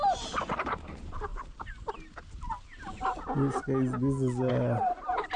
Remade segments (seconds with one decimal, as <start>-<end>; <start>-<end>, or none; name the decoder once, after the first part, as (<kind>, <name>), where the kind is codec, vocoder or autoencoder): 0.0-1.3 (vocoder, BigVGAN v2); 4.5-5.4